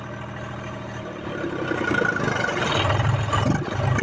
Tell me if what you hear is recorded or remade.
recorded